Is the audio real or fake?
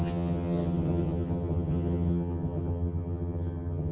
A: fake